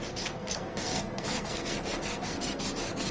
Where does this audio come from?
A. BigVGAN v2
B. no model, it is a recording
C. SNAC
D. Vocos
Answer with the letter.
C